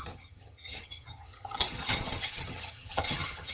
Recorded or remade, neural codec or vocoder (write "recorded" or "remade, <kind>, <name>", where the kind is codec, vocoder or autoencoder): remade, vocoder, HiFi-GAN